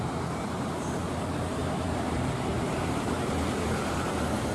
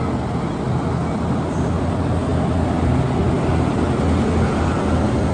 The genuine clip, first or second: second